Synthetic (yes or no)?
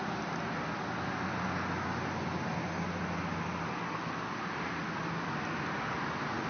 no